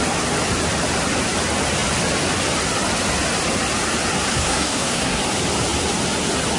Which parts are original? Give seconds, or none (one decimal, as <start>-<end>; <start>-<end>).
0.0-4.3; 5.2-6.6